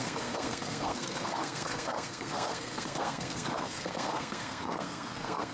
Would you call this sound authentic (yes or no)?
no